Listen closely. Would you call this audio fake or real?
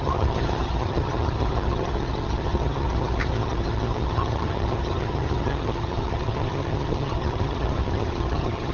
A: fake